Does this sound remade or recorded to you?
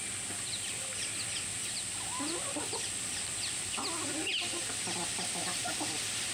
recorded